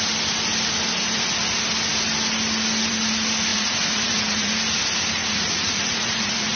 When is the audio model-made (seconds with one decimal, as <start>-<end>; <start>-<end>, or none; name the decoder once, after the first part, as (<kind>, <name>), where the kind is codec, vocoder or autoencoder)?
3.5-4.5 (vocoder, Vocos); 5.2-6.6